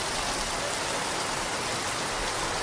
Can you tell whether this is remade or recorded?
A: recorded